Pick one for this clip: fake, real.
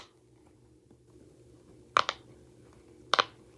real